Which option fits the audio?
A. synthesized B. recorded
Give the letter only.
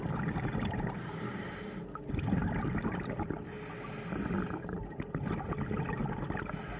B